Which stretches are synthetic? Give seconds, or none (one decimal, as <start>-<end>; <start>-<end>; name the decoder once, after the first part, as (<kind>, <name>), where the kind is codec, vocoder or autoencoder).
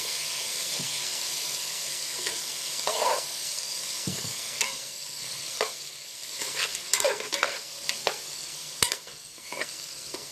0.0-10.3 (codec, SNAC)